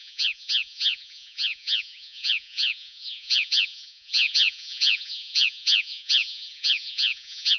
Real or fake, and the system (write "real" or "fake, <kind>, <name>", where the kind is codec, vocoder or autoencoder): fake, vocoder, Vocos